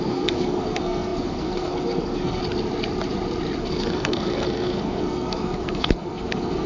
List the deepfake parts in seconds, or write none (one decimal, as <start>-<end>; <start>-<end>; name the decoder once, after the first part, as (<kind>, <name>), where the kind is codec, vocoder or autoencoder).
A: 0.0-2.4 (codec, SNAC); 3.6-6.7